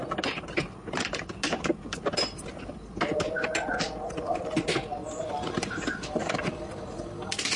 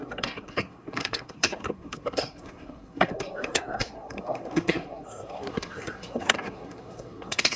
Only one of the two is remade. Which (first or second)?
second